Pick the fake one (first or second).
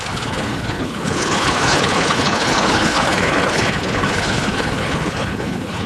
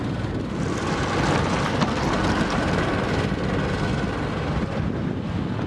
first